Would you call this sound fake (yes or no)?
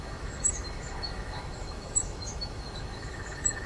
yes